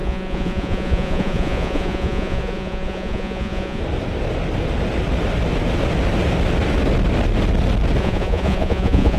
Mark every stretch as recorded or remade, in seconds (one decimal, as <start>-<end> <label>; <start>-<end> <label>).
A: 0.0-3.8 remade; 3.8-8.0 recorded; 8.0-9.2 remade